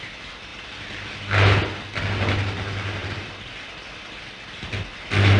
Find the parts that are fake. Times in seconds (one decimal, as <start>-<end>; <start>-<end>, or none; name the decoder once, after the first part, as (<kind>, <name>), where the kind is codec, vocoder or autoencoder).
0.5-1.1 (vocoder, BigVGAN v2); 3.0-4.0